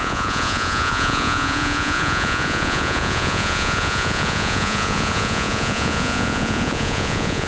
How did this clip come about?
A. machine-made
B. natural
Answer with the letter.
A